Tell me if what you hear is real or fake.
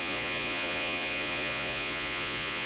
fake